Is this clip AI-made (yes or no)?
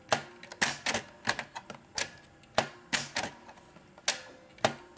no